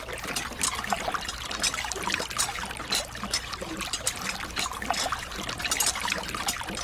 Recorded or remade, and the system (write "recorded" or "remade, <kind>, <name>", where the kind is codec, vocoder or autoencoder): recorded